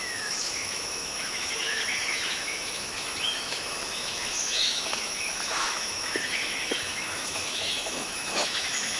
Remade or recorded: remade